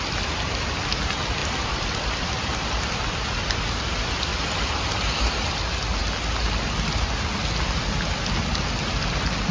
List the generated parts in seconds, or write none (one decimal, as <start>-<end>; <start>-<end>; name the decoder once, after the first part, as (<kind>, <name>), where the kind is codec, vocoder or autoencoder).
1.4-3.1 (vocoder, BigVGAN v2); 4.3-5.5